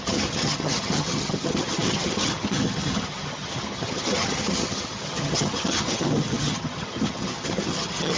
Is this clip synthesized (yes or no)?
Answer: yes